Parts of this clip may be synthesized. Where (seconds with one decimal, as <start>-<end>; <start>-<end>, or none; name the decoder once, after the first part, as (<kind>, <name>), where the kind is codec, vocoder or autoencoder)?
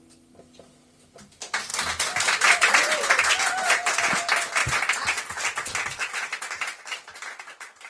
none